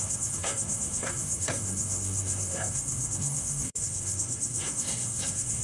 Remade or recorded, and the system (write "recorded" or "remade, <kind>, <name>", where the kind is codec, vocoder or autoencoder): remade, codec, SNAC